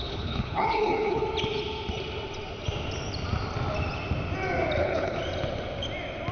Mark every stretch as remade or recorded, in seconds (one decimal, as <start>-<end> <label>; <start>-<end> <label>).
0.0-1.2 remade; 1.2-4.8 recorded; 4.8-5.2 remade; 5.2-6.3 recorded